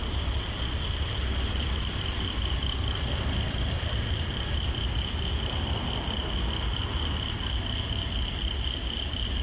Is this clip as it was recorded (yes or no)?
no